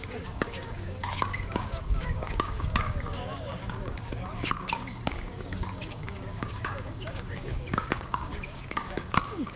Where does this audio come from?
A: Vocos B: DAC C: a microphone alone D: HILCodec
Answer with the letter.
B